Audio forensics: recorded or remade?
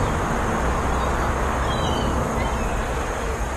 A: recorded